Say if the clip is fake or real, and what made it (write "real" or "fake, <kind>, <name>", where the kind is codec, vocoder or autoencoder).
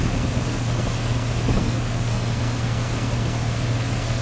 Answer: fake, codec, SNAC